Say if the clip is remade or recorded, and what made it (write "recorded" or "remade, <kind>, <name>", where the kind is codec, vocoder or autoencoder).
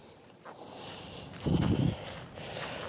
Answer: recorded